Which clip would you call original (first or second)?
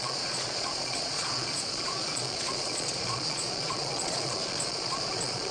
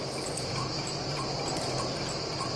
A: second